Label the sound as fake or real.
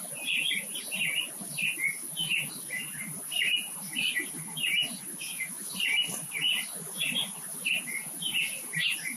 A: real